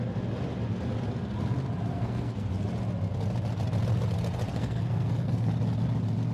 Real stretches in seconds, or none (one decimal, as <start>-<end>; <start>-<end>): 0.0-1.9; 2.5-4.5; 5.5-6.3